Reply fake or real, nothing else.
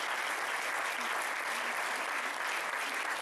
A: real